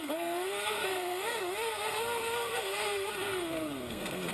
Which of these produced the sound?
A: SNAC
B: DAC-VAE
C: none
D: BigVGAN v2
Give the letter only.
A